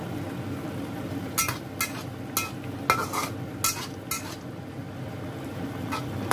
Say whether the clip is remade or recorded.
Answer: recorded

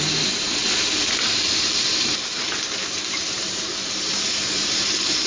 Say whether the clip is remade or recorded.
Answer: remade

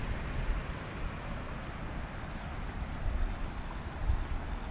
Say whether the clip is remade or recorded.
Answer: recorded